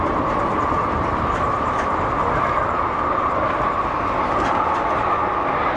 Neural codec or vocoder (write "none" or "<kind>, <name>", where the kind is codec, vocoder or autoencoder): none